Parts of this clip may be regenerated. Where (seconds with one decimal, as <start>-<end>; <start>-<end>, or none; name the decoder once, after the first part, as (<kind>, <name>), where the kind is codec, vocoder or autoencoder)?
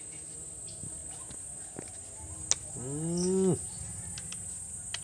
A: none